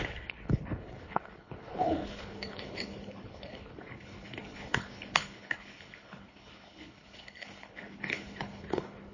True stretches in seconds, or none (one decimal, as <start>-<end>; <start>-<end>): none